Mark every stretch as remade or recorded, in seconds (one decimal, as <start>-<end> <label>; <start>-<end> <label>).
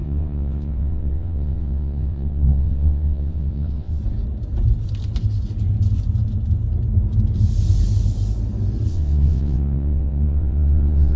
0.0-4.0 remade; 4.0-8.9 recorded; 8.9-11.2 remade